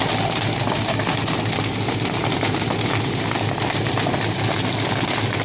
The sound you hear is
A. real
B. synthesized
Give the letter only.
A